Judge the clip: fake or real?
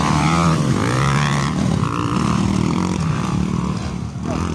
real